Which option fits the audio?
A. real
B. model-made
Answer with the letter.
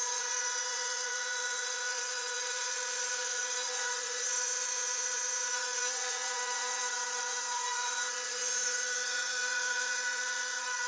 B